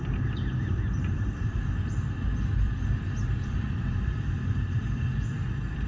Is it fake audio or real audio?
fake